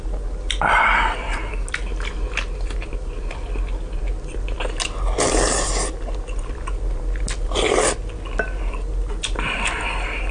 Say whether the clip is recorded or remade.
recorded